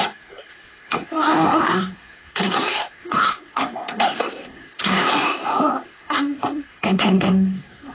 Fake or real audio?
fake